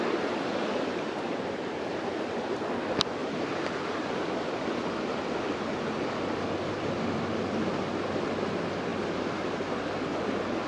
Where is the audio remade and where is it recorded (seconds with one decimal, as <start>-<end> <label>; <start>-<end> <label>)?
0.0-10.7 recorded